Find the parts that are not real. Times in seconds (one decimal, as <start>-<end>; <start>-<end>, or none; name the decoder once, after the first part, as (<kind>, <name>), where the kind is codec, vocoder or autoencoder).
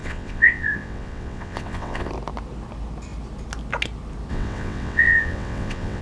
0.0-2.1 (vocoder, WaveNeXt); 4.3-6.0